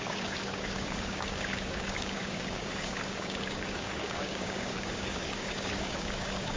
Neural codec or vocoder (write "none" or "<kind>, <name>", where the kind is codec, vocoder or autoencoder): codec, DAC